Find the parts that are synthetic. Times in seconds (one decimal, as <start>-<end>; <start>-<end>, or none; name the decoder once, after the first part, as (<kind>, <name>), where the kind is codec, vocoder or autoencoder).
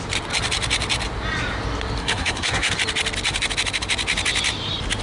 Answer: 2.0-2.7 (codec, SNAC)